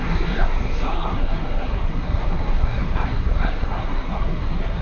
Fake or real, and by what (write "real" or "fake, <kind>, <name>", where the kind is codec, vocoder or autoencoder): fake, codec, SNAC